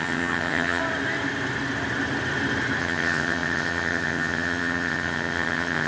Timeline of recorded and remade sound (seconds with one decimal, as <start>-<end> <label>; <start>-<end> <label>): 0.0-0.8 remade; 0.8-2.8 recorded; 2.8-5.9 remade